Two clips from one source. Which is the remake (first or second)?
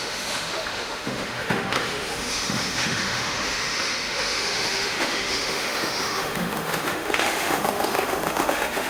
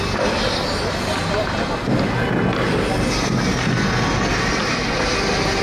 first